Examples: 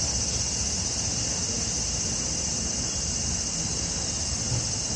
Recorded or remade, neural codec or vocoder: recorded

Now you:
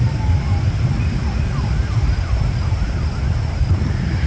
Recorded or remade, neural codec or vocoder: recorded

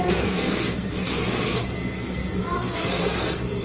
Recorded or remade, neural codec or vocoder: remade, codec, SNAC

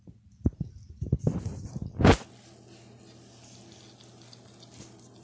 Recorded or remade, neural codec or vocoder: recorded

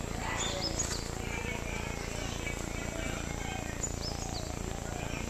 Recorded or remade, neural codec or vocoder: recorded